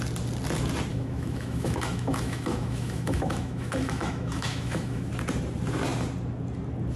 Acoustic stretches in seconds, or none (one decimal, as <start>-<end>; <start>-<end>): 0.0-0.9; 5.1-7.0